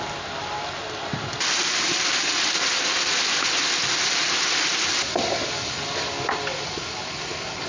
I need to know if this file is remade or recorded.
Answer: recorded